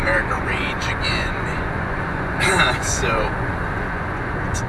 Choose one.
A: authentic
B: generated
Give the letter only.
B